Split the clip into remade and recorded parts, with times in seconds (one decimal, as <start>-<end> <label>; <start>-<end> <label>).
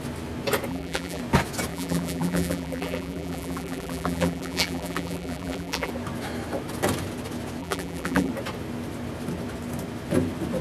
0.0-0.7 recorded; 0.7-1.2 remade; 1.2-1.7 recorded; 1.7-5.9 remade; 5.9-7.6 recorded; 7.6-8.3 remade; 8.3-10.6 recorded